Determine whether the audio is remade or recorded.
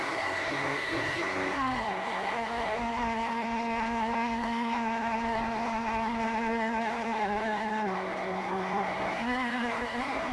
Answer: remade